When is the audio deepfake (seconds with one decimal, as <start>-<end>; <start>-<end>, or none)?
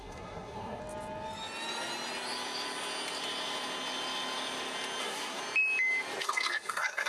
0.0-0.8; 5.0-5.4; 6.2-7.1